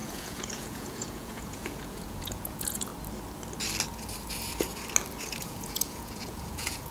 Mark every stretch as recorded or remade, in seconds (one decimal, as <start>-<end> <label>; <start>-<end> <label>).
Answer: 0.0-2.9 remade; 2.9-5.3 recorded; 5.3-6.9 remade